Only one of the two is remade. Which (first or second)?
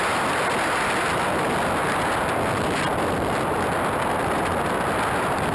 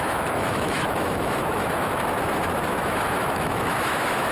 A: second